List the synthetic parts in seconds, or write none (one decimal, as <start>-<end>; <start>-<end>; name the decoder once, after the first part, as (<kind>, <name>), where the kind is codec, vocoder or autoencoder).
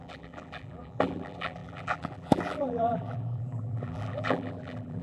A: 0.0-5.0 (vocoder, BigVGAN v2)